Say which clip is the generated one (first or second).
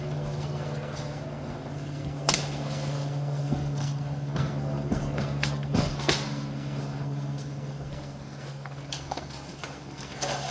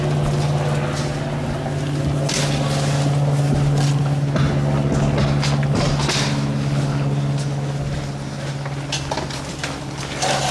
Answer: first